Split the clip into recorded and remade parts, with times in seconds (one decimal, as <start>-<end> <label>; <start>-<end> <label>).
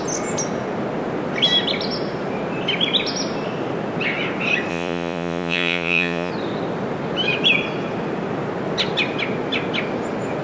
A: 0.0-4.7 recorded; 4.7-6.3 remade; 6.3-10.4 recorded